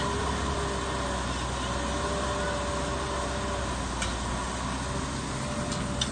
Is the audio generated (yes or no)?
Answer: no